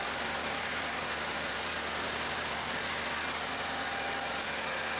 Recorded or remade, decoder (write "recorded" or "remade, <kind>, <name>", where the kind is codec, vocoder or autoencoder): recorded